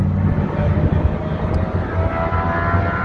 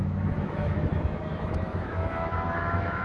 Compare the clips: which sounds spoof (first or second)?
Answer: second